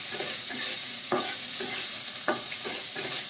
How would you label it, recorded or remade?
remade